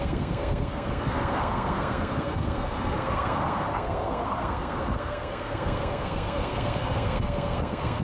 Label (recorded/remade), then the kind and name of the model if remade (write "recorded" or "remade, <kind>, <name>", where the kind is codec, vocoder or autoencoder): remade, codec, SNAC